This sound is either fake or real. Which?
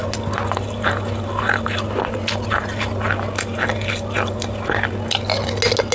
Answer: real